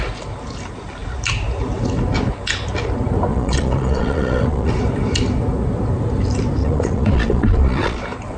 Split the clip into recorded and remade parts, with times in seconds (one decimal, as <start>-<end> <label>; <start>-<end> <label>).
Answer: 0.0-3.3 recorded; 3.3-4.7 remade; 4.7-6.6 recorded; 6.6-8.0 remade; 8.0-8.4 recorded